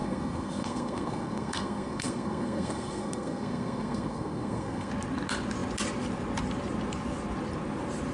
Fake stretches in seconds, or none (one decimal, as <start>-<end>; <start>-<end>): 0.0-4.9